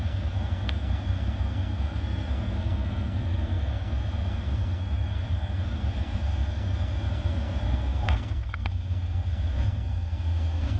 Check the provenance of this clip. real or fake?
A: fake